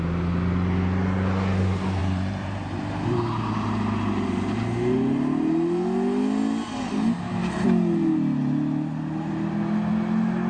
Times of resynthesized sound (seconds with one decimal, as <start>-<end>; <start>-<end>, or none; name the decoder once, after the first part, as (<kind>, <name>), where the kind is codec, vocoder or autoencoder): 2.0-3.2 (vocoder, BigVGAN v2)